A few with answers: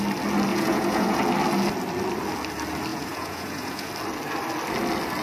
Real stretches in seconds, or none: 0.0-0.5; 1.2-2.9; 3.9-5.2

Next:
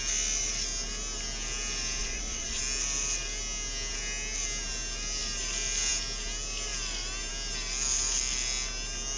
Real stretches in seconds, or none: 0.0-2.0; 2.6-9.2

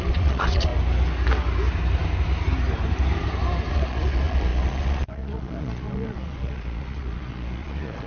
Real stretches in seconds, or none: 0.7-3.7

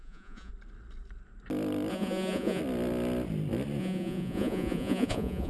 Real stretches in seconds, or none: 0.5-1.9; 2.6-3.8

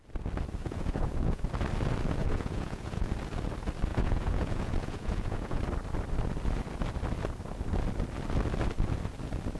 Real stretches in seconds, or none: 0.0-0.6; 1.4-2.2; 3.1-3.9; 5.6-9.6

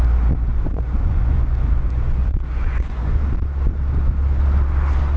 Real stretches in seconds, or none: 0.0-0.5; 1.7-2.2; 3.2-5.2

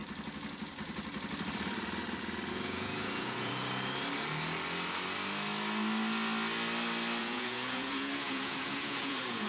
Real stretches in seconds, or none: 0.0-2.5; 3.5-7.2

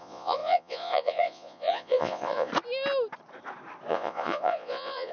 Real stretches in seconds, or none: 2.5-3.9